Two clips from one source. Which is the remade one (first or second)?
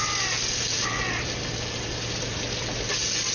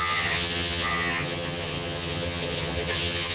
second